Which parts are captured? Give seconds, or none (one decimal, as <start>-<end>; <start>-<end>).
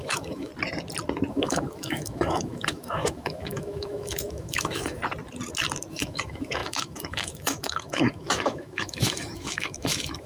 0.5-1.3; 5.0-5.9